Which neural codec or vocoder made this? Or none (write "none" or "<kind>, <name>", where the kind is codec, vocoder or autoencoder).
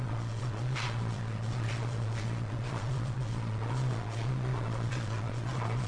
vocoder, Vocos